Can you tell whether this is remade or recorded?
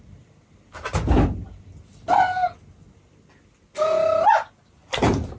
recorded